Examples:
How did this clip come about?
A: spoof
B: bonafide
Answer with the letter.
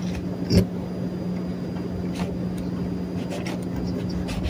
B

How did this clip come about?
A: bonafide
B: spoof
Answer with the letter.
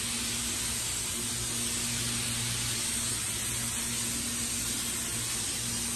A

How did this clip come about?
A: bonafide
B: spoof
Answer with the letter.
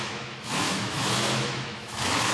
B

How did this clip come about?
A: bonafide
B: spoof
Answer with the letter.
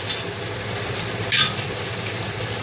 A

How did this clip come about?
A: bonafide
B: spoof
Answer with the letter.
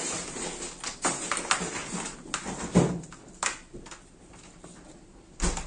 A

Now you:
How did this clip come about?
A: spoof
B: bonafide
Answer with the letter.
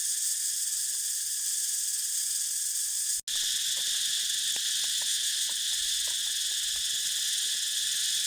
B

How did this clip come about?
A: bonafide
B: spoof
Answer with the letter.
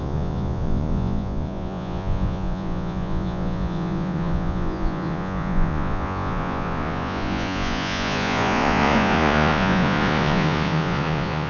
B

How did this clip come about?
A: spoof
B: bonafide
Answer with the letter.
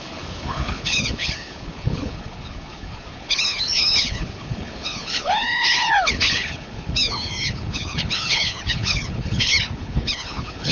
A